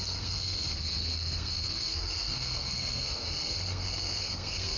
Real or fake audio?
fake